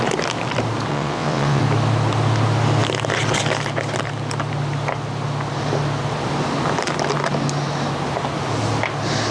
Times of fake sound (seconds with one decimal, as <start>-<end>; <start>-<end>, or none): 0.9-1.6